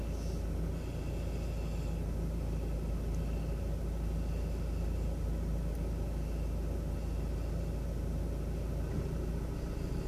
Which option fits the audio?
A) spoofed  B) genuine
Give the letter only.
B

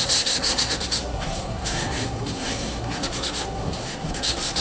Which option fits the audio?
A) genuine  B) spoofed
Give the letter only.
B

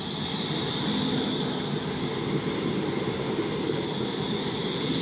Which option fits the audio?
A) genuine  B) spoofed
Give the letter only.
A